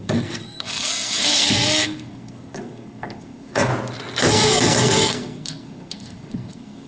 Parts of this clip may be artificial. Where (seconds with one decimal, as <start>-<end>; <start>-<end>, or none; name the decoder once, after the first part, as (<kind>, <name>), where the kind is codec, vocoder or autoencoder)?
0.0-3.7 (codec, SNAC); 4.3-6.9